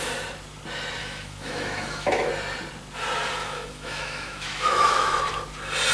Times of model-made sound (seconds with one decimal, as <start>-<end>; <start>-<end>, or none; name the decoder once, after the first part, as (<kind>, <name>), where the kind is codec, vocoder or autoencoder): 1.0-2.3 (autoencoder, DAC-VAE); 3.4-5.2